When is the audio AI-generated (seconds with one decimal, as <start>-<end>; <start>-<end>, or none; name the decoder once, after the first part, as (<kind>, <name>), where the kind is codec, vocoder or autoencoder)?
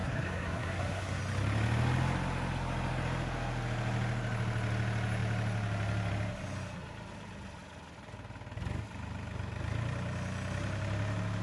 0.0-1.2 (codec, SNAC)